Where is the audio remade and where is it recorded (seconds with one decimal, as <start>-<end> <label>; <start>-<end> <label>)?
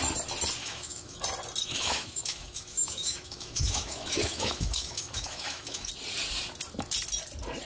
0.0-0.6 recorded; 0.6-1.2 remade; 1.2-1.6 recorded; 1.6-5.9 remade; 5.9-7.6 recorded